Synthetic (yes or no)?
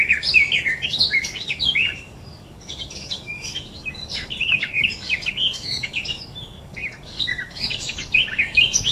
yes